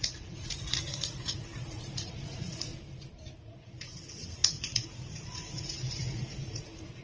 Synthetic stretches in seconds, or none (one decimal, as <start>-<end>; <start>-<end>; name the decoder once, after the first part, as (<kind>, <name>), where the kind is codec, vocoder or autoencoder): 0.0-2.7 (vocoder, Vocos); 3.4-7.0